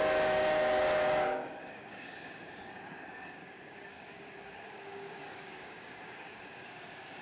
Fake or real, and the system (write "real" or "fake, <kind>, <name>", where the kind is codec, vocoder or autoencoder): fake, codec, DAC